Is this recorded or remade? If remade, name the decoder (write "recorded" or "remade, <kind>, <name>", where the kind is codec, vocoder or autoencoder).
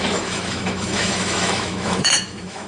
remade, autoencoder, DAC-VAE